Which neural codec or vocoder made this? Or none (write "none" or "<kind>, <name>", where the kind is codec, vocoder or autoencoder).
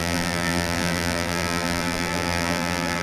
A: vocoder, BigVGAN v2